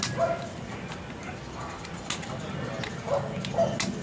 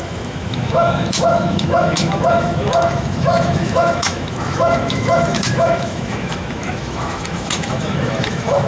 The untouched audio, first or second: first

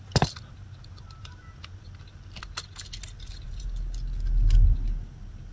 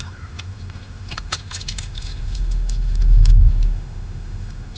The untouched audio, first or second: first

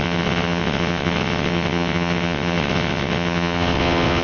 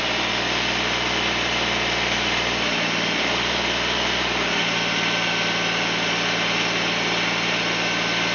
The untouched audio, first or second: second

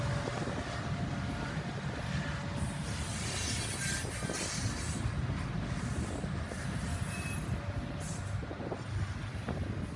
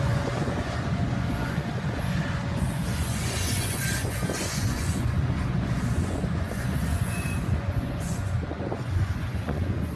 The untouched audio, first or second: first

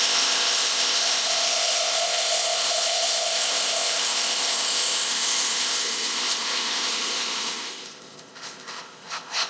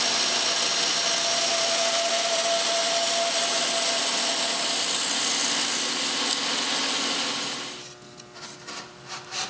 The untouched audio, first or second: second